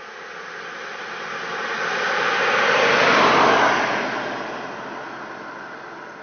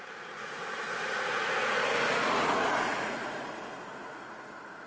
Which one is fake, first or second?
second